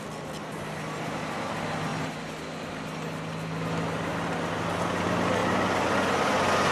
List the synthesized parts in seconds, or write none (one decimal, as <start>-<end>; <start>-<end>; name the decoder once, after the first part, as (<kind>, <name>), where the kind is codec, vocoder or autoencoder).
none